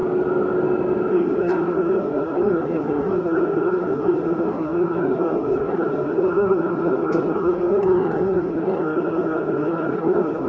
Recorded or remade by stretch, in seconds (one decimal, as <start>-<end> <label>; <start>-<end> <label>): 0.0-1.1 recorded; 1.1-10.5 remade